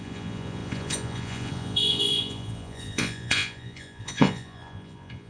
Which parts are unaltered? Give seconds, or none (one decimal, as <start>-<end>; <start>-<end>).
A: none